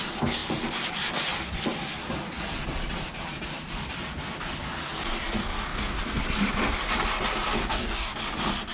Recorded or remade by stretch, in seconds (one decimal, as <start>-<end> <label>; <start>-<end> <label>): 0.0-5.4 recorded; 5.4-6.0 remade; 6.0-7.6 recorded; 7.6-8.2 remade; 8.2-8.7 recorded